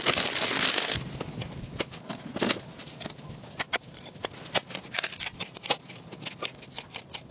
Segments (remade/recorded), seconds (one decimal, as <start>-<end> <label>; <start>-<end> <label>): 0.0-2.8 recorded; 2.8-4.1 remade; 4.1-7.3 recorded